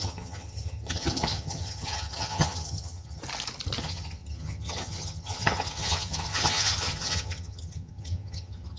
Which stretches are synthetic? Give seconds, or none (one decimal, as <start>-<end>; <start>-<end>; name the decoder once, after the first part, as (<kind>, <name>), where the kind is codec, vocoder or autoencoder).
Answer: 0.0-3.2 (vocoder, HiFi-GAN); 3.8-8.8